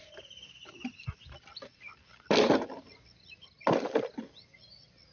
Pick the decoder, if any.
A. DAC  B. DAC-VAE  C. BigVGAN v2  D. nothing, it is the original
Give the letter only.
D